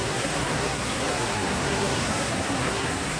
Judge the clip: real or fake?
fake